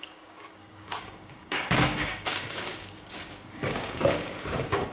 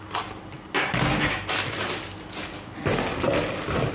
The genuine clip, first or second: second